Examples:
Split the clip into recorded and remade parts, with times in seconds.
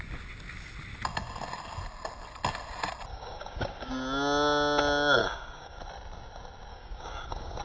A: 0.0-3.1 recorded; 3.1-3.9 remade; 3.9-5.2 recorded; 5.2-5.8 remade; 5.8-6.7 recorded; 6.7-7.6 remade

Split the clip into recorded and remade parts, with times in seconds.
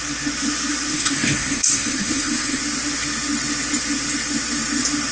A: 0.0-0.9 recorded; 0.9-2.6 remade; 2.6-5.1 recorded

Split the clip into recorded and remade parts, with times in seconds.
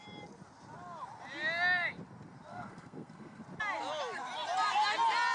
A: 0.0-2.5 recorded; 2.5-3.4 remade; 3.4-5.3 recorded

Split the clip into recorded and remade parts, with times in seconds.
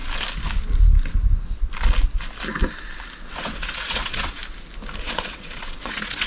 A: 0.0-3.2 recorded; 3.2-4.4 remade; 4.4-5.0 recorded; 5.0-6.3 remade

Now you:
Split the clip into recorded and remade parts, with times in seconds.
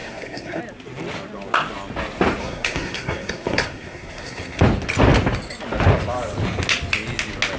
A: 0.0-0.6 remade; 0.6-2.4 recorded; 2.4-4.6 remade; 4.6-7.6 recorded